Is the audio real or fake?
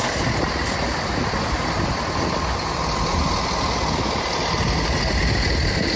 real